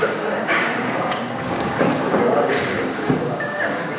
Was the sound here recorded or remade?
remade